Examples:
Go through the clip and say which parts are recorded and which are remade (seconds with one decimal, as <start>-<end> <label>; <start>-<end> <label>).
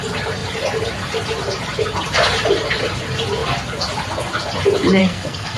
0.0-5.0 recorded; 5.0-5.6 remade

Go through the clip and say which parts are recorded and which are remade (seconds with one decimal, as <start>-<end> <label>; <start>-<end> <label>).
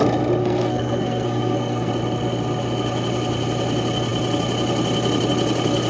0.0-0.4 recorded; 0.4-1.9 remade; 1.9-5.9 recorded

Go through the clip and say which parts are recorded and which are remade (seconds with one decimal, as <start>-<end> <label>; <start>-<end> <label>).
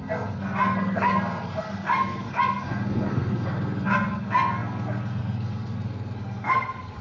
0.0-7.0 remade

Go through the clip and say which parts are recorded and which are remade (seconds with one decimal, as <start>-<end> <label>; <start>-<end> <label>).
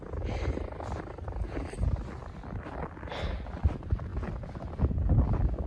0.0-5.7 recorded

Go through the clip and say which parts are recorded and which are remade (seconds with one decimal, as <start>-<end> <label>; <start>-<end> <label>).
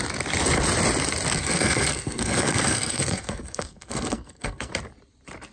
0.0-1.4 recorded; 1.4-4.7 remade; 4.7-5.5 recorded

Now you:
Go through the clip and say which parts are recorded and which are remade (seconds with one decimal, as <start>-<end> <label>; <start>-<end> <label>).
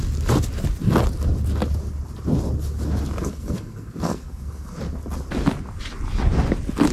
0.0-3.2 recorded; 3.2-4.8 remade; 4.8-6.9 recorded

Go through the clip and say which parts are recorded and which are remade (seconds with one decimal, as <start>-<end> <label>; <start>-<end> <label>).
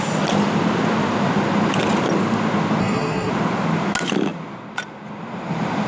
0.0-2.8 recorded; 2.8-3.3 remade; 3.3-5.9 recorded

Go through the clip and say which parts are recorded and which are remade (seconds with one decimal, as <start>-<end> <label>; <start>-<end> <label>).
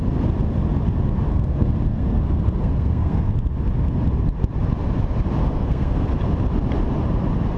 0.0-1.3 recorded; 1.3-3.3 remade; 3.3-5.4 recorded; 5.4-6.1 remade; 6.1-7.6 recorded